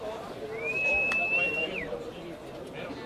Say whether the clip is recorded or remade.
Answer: recorded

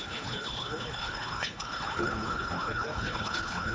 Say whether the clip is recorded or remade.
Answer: remade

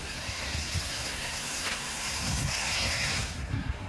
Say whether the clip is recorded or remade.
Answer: remade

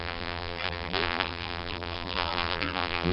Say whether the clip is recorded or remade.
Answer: remade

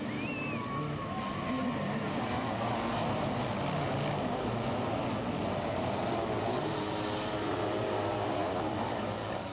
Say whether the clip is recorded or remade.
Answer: recorded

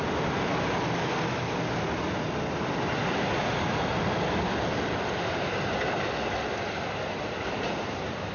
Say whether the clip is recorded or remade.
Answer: recorded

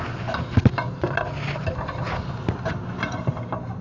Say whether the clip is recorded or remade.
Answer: recorded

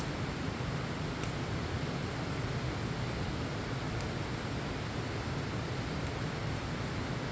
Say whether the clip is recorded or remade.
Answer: recorded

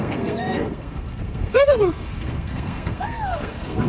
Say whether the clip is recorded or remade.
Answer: remade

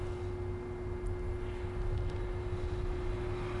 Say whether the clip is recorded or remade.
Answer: recorded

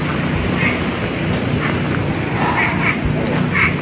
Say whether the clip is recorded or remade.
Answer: recorded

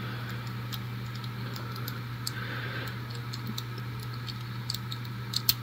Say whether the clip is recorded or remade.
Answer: recorded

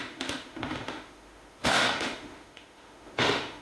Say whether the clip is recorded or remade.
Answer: remade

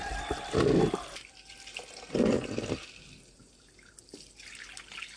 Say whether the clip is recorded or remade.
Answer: recorded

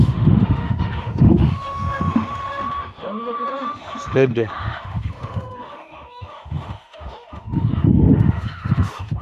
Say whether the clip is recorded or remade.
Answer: remade